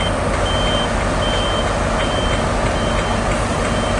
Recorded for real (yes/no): yes